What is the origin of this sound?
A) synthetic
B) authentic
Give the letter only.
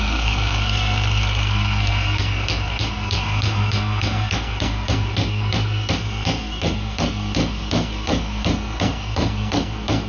A